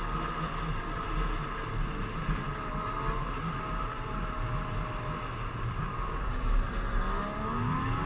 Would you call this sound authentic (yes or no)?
yes